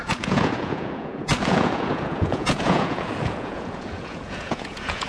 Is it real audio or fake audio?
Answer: fake